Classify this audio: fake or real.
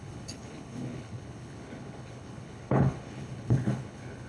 fake